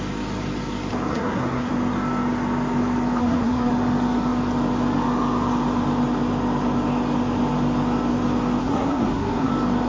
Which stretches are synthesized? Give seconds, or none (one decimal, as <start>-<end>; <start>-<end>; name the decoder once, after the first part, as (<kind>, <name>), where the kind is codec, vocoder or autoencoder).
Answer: 1.1-1.7 (codec, SNAC); 3.2-3.7; 8.6-9.5